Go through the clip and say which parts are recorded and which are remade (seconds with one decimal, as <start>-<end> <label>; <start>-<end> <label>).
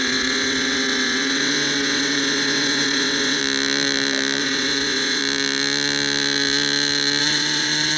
0.0-3.4 remade; 3.4-4.4 recorded; 4.4-5.2 remade; 5.2-7.2 recorded; 7.2-8.0 remade